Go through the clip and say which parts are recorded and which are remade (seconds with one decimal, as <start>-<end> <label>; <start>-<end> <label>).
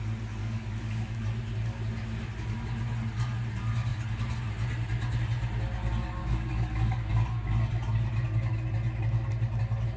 0.0-0.4 recorded; 0.4-1.2 remade; 1.2-6.2 recorded; 6.2-7.1 remade; 7.1-10.0 recorded